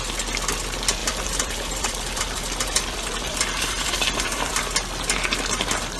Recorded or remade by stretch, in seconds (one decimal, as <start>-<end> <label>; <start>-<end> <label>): 0.0-1.0 recorded; 1.0-4.5 remade; 4.5-6.0 recorded